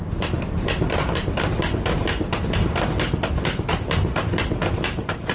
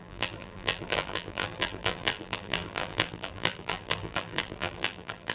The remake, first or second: second